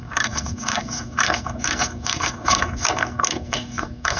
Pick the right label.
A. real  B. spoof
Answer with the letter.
B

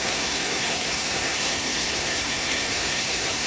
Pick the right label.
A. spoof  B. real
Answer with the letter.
A